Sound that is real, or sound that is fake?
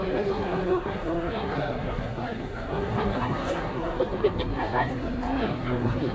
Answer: fake